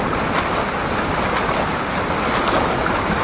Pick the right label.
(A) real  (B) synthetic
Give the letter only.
A